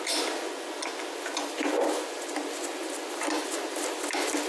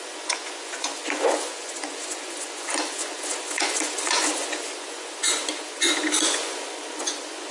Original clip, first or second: first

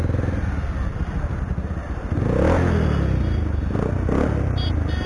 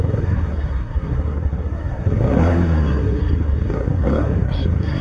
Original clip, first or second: first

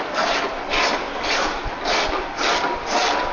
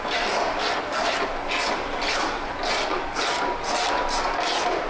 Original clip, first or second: second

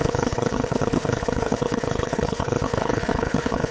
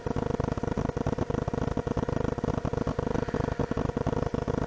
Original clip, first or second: second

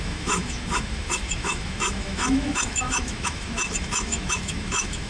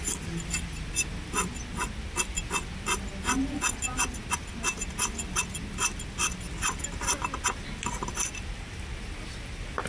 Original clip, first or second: second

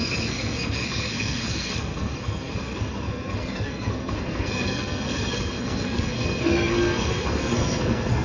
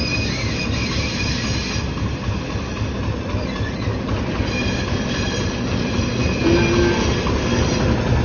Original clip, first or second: second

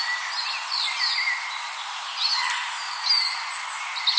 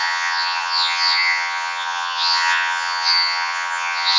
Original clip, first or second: first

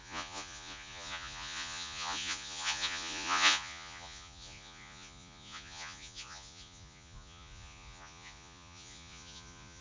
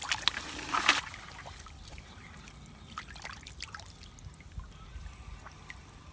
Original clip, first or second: second